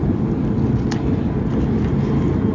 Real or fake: real